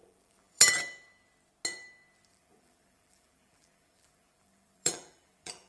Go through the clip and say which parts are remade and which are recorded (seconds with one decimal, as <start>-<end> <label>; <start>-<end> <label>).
0.0-0.7 remade; 0.7-2.3 recorded; 2.3-5.7 remade